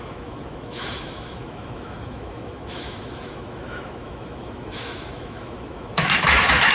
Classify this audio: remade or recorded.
remade